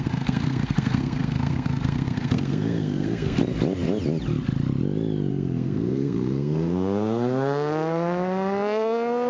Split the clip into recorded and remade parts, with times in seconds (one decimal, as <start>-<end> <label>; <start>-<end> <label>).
0.0-3.4 remade; 3.4-5.3 recorded; 5.3-9.3 remade